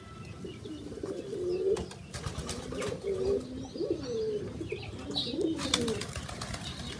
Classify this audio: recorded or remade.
recorded